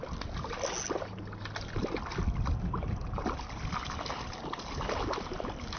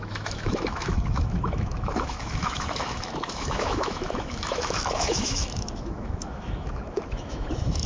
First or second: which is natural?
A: first